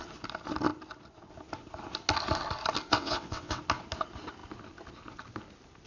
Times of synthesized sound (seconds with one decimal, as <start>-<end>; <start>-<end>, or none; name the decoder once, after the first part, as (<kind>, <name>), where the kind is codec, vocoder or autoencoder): 2.9-3.6 (vocoder, WaveNeXt)